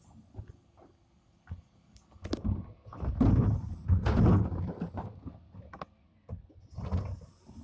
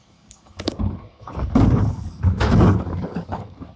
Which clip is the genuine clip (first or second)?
first